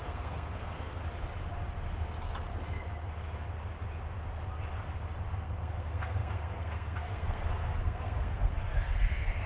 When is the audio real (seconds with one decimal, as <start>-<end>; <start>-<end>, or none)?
1.0-5.3